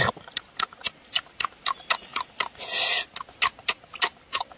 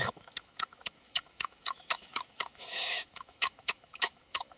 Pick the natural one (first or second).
first